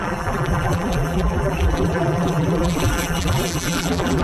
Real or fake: fake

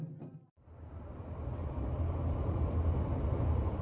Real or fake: real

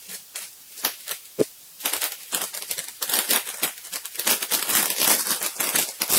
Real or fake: real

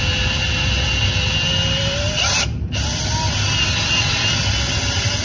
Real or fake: real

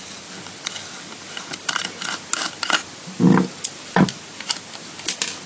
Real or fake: real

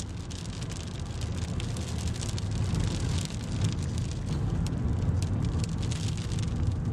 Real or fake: real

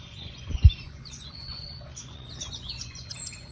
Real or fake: fake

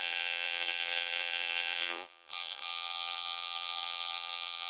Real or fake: fake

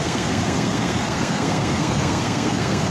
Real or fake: fake